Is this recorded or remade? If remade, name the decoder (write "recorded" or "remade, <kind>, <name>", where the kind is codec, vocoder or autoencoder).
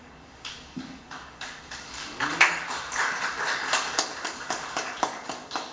remade, codec, DAC